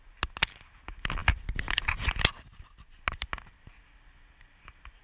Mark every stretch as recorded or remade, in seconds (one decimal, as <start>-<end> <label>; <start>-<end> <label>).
0.0-5.0 recorded